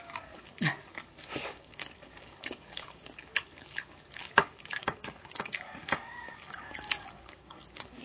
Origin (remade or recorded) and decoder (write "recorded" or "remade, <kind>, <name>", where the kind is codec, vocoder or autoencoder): remade, codec, DAC